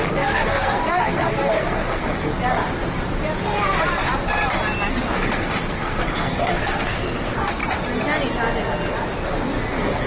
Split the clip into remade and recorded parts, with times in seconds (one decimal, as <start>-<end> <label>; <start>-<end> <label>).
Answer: 0.0-2.3 remade; 2.3-5.1 recorded; 5.1-7.6 remade; 7.6-9.7 recorded; 9.7-10.1 remade